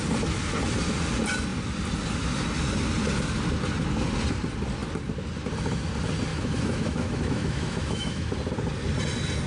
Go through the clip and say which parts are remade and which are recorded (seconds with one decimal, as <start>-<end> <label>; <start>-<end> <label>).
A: 0.0-6.3 recorded; 6.3-8.3 remade; 8.3-9.5 recorded